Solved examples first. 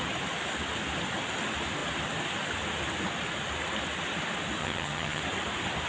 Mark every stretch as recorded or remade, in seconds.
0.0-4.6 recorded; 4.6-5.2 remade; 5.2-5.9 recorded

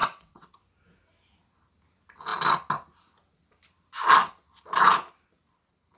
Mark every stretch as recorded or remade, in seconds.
0.0-0.6 remade; 0.6-6.0 recorded

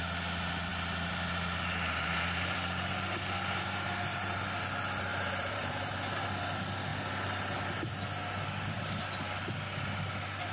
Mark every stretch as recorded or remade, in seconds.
0.0-0.7 recorded; 0.7-4.4 remade; 4.4-5.1 recorded; 5.1-5.9 remade; 5.9-10.5 recorded